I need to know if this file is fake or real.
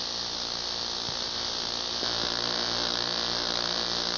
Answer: real